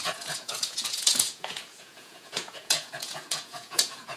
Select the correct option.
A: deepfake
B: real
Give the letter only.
A